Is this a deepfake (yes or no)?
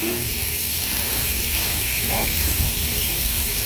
yes